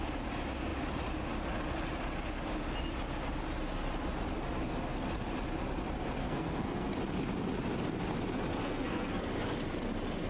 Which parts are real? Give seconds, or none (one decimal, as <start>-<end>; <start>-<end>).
0.0-6.2; 6.9-8.6; 9.2-10.3